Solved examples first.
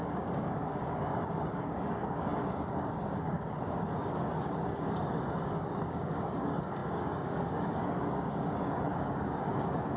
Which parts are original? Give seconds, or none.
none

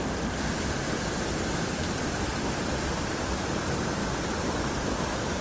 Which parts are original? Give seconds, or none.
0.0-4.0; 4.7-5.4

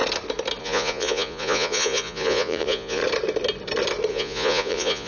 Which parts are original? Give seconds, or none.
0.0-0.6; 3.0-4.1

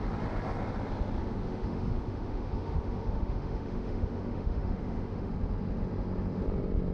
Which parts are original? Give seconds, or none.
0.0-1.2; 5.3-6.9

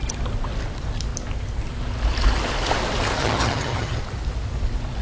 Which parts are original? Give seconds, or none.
0.0-3.2; 4.0-5.0

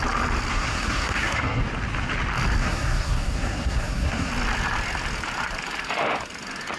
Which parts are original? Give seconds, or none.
0.0-0.5; 1.6-2.6; 4.3-6.8